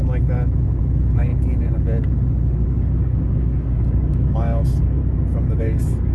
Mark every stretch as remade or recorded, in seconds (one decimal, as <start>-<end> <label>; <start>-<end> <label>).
0.0-0.8 recorded; 0.8-1.3 remade; 1.3-2.5 recorded; 2.5-5.0 remade; 5.0-5.6 recorded; 5.6-6.1 remade

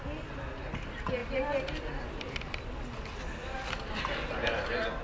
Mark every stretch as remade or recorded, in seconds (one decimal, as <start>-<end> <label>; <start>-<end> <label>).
0.0-5.0 recorded

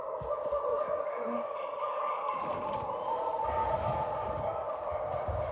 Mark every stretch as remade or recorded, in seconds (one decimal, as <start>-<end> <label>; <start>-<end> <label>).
0.0-0.7 recorded; 0.7-2.4 remade; 2.4-3.6 recorded; 3.6-5.0 remade; 5.0-5.5 recorded

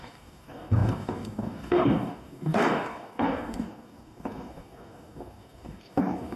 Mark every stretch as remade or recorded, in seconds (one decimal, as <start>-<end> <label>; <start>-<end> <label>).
0.0-6.4 remade

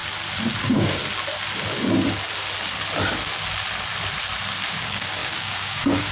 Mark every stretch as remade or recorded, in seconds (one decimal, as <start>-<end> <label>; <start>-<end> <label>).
0.0-0.6 recorded; 0.6-1.0 remade; 1.0-4.7 recorded; 4.7-6.1 remade

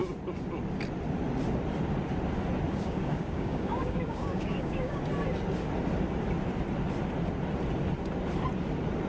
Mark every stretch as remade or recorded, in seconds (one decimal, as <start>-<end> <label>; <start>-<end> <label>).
0.0-2.7 recorded; 2.7-5.0 remade; 5.0-9.1 recorded

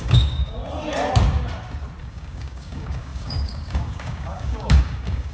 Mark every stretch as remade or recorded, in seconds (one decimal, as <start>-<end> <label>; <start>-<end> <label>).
0.0-0.6 remade; 0.6-2.0 recorded; 2.0-5.3 remade